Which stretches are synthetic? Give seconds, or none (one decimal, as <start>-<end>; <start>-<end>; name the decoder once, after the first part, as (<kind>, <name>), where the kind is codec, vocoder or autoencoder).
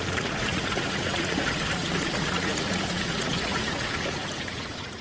0.0-5.0 (vocoder, Vocos)